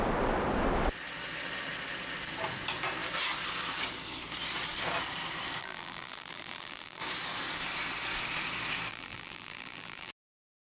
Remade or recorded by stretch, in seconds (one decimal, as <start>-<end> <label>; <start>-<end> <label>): 0.0-5.6 recorded; 5.6-7.0 remade; 7.0-8.9 recorded; 8.9-10.1 remade; 10.1-10.7 recorded